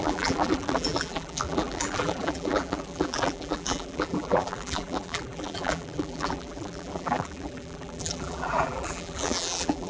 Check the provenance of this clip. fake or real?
fake